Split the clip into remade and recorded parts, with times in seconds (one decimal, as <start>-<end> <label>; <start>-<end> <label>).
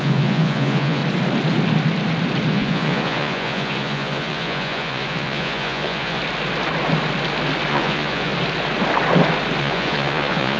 0.0-1.0 remade; 1.0-2.5 recorded; 2.5-6.2 remade; 6.2-7.7 recorded; 7.7-8.3 remade; 8.3-9.6 recorded; 9.6-10.6 remade